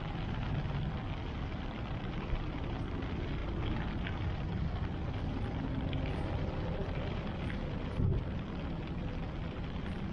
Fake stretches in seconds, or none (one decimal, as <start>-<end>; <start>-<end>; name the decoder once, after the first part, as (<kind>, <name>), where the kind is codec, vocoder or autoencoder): 0.0-10.1 (vocoder, BigVGAN v2)